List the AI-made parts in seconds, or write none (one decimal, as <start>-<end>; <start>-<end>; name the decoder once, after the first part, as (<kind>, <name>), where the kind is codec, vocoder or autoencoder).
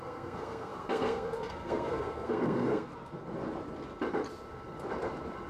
0.0-2.9 (codec, SNAC)